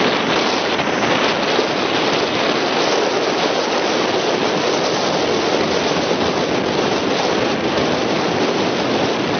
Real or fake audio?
real